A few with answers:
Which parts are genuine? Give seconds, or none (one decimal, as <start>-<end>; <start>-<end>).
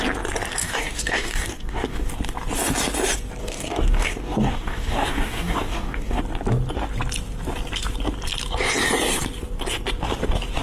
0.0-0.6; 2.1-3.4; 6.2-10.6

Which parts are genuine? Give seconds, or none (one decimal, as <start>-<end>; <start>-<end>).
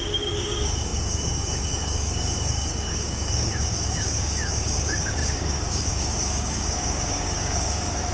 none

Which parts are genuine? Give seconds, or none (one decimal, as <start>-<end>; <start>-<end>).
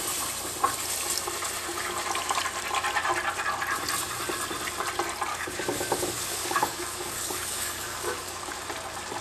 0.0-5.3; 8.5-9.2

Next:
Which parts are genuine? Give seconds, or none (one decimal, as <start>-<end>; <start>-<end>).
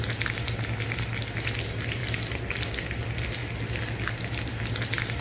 0.0-5.2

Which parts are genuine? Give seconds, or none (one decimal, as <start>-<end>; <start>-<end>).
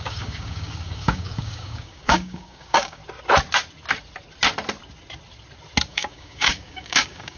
3.0-5.9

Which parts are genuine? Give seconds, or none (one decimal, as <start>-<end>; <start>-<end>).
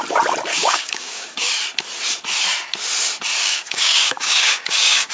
0.0-0.5; 1.5-3.4